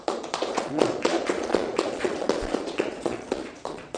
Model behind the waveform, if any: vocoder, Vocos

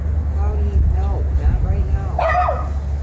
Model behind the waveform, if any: none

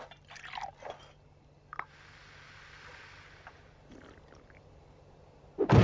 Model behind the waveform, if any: none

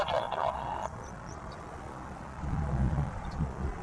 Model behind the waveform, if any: vocoder, Vocos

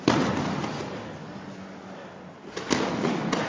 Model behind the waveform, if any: none